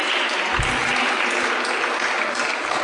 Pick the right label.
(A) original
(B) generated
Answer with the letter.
A